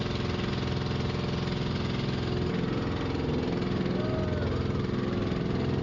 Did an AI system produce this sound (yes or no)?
no